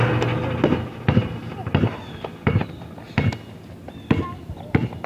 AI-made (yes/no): no